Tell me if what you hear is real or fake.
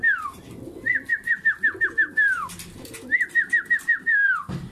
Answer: fake